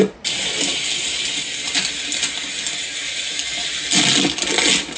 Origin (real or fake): real